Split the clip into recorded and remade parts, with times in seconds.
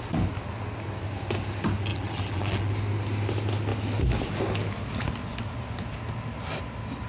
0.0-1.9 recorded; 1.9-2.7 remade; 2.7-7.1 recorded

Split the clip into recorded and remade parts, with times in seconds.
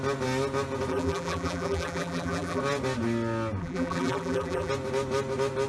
0.0-0.9 recorded; 0.9-2.6 remade; 2.6-3.6 recorded; 3.6-4.7 remade; 4.7-5.7 recorded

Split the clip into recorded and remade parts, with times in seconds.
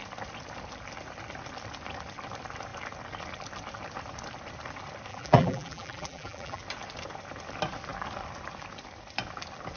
0.0-5.1 recorded; 5.1-6.6 remade; 6.6-9.8 recorded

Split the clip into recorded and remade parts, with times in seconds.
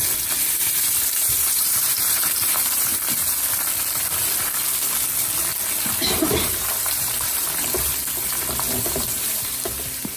0.0-0.6 recorded; 0.6-2.9 remade; 2.9-5.8 recorded; 5.8-7.9 remade; 7.9-8.9 recorded; 8.9-10.2 remade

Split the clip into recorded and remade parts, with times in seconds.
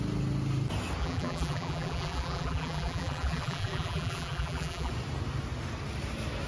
0.0-1.0 recorded; 1.0-4.9 remade; 4.9-6.5 recorded